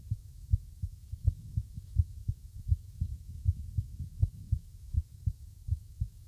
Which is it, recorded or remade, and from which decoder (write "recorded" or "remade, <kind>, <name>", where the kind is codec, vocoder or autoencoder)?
remade, autoencoder, DAC-VAE